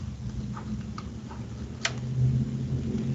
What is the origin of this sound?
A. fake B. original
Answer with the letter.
B